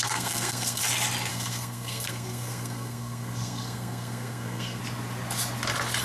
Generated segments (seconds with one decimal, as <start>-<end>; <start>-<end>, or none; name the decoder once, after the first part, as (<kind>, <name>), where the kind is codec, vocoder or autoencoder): 0.0-0.8 (codec, SNAC); 1.3-4.8